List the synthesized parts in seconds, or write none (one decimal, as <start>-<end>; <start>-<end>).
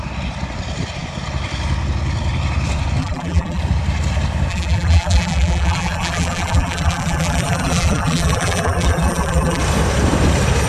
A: 3.0-3.6; 4.5-9.6